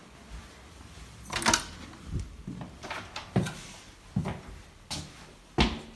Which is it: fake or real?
real